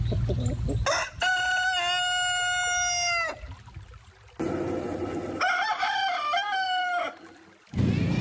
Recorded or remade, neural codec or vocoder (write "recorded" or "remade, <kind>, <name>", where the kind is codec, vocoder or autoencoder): recorded